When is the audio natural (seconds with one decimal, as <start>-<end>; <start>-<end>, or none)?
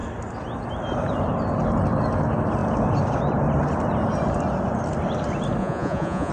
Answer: 0.0-5.6